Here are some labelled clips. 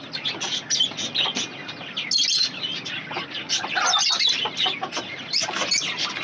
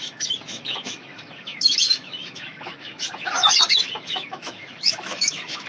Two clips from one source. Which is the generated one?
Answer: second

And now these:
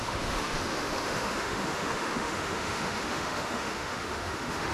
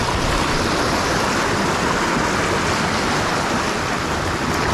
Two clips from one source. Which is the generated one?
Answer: first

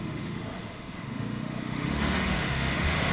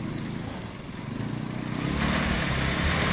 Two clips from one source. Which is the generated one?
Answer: first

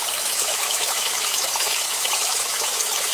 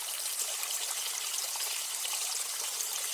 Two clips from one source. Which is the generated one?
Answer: first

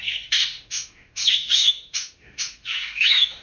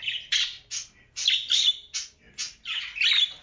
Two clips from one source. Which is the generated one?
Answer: first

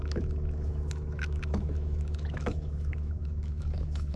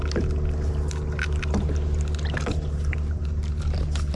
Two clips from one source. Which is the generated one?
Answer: first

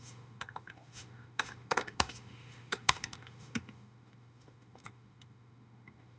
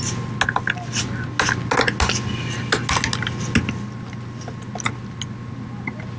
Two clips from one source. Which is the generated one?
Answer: first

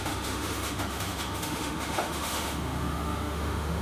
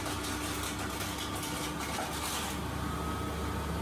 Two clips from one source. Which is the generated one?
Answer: first